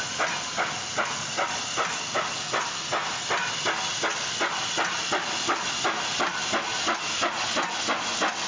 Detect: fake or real real